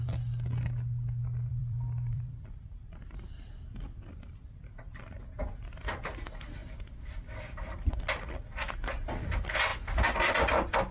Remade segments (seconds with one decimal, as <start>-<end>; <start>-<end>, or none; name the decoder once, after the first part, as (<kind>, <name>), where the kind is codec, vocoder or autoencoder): 1.5-4.8 (vocoder, BigVGAN v2); 6.6-8.0; 9.7-10.5